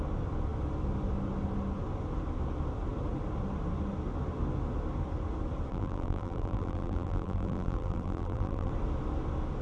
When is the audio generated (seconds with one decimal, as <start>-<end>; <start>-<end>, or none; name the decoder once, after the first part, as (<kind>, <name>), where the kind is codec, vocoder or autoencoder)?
5.7-8.7 (vocoder, BigVGAN v2)